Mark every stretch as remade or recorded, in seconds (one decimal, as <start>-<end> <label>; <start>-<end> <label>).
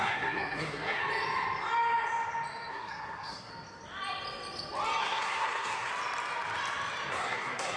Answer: 0.0-1.0 remade; 1.0-2.7 recorded; 2.7-3.5 remade; 3.5-5.0 recorded; 5.0-5.9 remade; 5.9-7.1 recorded; 7.1-7.8 remade